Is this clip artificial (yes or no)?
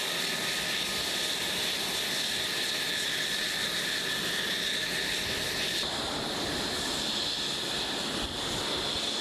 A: no